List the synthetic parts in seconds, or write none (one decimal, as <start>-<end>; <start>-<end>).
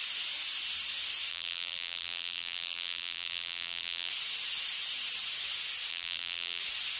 1.3-4.1; 5.9-6.6